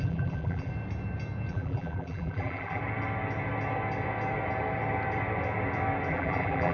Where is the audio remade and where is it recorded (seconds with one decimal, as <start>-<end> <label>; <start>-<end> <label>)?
0.0-0.7 remade; 0.7-1.5 recorded; 1.5-2.8 remade; 2.8-6.1 recorded; 6.1-6.7 remade